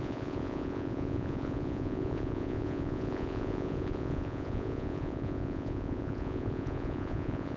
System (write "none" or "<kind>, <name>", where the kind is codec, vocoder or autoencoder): vocoder, Vocos